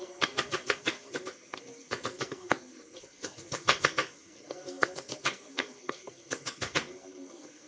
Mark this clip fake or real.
fake